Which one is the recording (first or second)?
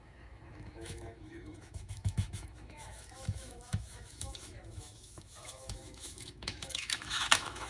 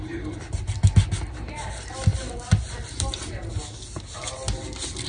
second